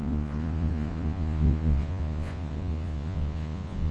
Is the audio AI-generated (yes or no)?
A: yes